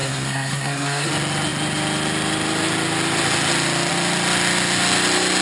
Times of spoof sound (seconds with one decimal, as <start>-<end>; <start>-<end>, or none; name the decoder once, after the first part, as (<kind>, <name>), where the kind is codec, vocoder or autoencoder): 0.0-1.1 (codec, SNAC)